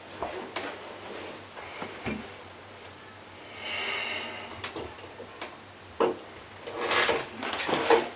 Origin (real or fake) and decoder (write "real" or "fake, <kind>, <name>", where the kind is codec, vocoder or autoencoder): real